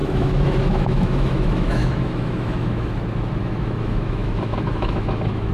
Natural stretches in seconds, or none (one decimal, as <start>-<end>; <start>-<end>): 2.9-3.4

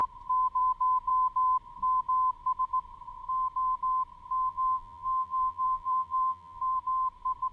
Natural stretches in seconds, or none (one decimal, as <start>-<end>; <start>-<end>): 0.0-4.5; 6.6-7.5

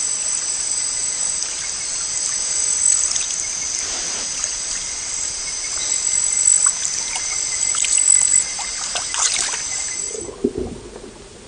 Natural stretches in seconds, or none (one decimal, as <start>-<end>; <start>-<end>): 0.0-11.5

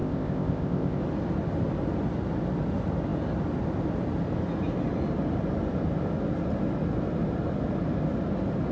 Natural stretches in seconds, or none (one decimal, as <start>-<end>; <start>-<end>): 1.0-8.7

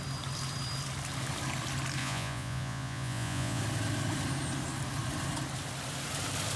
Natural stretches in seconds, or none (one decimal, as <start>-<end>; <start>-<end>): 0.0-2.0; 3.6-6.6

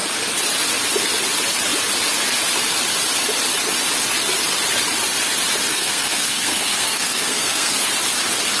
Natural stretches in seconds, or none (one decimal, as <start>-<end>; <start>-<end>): 0.0-5.7; 7.9-8.6

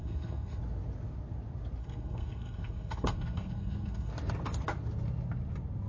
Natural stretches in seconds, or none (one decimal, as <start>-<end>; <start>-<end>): 0.6-1.8; 4.1-5.9

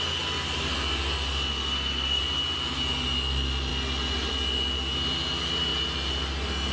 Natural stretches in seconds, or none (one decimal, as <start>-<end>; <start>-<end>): 0.0-1.5; 2.2-6.7